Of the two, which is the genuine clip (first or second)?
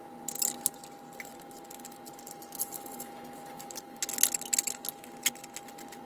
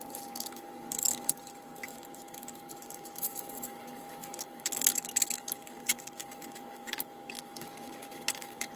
first